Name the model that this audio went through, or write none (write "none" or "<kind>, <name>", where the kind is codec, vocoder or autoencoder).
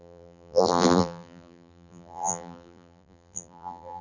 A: vocoder, BigVGAN v2